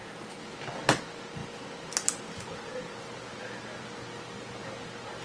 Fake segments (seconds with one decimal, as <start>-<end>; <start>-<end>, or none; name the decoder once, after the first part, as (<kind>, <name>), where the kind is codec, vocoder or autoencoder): none